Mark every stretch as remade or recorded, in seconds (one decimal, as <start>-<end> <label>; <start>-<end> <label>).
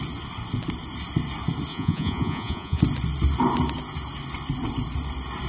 0.0-1.7 recorded; 1.7-2.8 remade; 2.8-5.5 recorded